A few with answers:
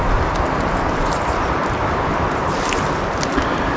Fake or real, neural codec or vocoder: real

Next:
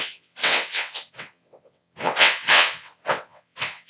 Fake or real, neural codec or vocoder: fake, vocoder, WaveNeXt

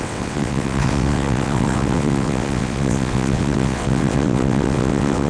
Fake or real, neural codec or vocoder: fake, vocoder, WaveNeXt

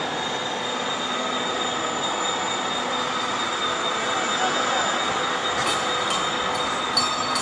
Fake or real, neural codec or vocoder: real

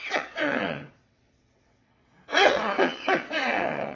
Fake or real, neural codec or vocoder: fake, vocoder, WaveNeXt